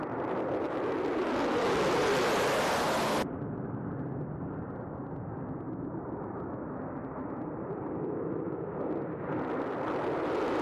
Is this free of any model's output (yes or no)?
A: yes